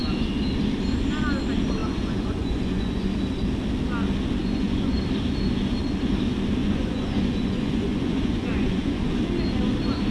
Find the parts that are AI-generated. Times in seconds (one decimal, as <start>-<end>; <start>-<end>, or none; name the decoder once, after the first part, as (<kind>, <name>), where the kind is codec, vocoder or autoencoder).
1.8-3.1 (vocoder, Vocos); 4.4-5.0; 6.6-9.1